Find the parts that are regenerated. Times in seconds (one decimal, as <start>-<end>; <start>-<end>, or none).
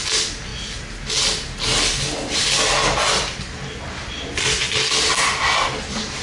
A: none